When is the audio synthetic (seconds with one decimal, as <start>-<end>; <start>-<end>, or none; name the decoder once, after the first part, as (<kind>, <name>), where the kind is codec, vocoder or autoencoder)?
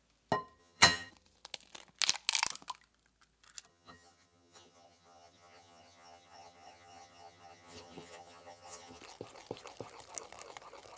0.6-1.1 (vocoder, HiFi-GAN); 3.7-9.0